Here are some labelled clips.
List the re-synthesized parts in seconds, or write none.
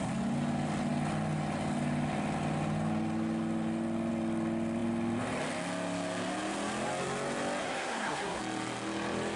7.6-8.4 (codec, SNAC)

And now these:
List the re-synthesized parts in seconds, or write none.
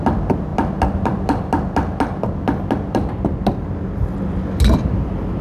none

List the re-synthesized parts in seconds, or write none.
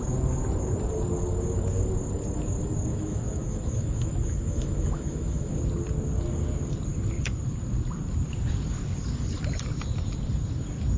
2.9-5.5 (autoencoder, DAC-VAE)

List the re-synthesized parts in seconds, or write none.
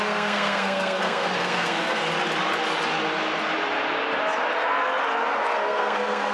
0.0-2.0 (codec, SNAC); 5.3-6.3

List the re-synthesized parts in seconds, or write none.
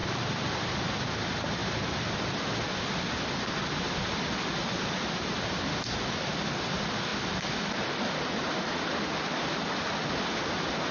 0.0-0.6 (vocoder, BigVGAN v2); 1.6-2.6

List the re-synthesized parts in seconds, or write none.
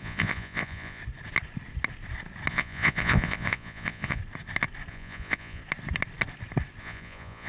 0.0-1.0 (vocoder, Vocos); 2.5-4.2; 4.9-5.6; 6.8-7.5